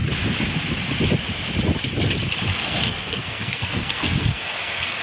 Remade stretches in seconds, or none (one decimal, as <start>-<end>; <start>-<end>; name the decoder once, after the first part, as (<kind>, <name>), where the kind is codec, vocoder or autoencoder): 2.5-5.0 (codec, SNAC)